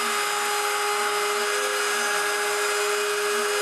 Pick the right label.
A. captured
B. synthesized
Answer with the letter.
A